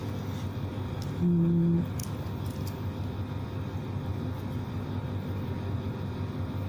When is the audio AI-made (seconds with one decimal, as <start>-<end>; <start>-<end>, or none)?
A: none